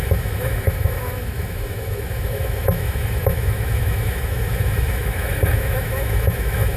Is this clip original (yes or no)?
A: no